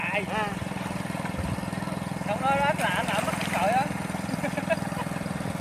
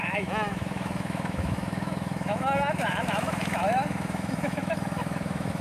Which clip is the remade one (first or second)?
second